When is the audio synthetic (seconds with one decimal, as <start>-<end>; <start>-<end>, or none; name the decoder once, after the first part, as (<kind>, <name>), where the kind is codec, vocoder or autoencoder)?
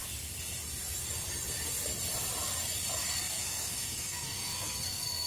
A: 3.2-5.3 (codec, SNAC)